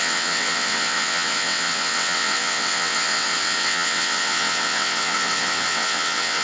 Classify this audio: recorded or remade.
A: remade